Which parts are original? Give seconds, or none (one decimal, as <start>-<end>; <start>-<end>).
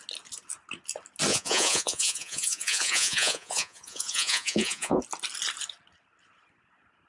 0.0-1.3; 5.0-7.1